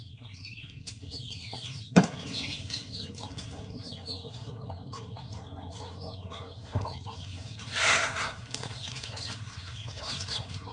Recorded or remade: remade